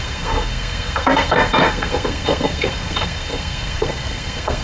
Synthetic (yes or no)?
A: yes